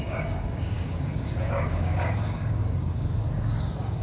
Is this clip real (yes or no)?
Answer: no